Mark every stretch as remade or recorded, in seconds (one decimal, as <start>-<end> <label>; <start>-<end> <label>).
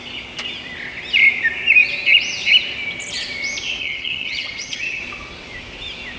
0.0-3.8 recorded; 3.8-5.0 remade; 5.0-6.2 recorded